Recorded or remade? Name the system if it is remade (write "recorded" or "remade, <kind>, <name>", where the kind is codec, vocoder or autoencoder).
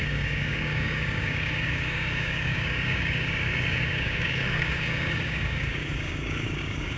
remade, codec, DAC